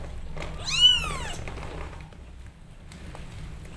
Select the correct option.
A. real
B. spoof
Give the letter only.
A